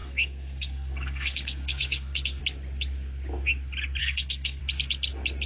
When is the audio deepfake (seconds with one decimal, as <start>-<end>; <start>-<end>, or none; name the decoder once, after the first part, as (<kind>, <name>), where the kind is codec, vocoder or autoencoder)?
0.0-2.4 (codec, SNAC); 4.0-4.6